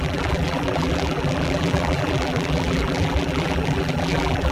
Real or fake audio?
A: fake